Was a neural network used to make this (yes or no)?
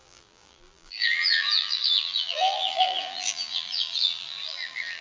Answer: yes